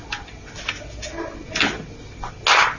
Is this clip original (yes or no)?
yes